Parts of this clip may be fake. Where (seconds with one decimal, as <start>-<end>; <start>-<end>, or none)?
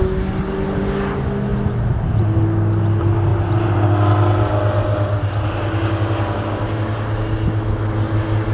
none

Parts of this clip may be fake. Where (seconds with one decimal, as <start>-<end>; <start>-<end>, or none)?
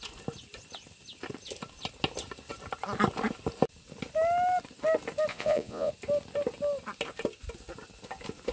5.3-5.9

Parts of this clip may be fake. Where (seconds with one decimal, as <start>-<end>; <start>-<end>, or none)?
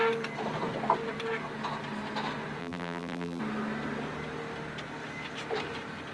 2.6-3.4